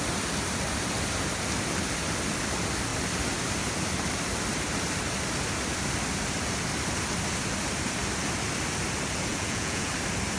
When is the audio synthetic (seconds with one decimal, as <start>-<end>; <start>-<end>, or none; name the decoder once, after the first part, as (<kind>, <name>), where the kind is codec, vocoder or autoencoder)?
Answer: 9.3-9.9 (vocoder, Vocos)